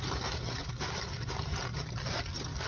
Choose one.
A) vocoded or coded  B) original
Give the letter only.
B